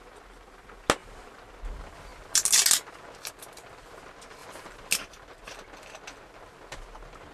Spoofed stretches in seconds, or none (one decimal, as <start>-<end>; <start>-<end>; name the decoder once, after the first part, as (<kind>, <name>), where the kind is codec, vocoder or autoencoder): 1.0-1.5 (vocoder, BigVGAN v2); 4.4-4.9